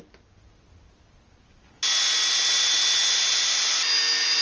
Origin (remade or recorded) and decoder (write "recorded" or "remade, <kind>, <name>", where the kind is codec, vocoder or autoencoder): recorded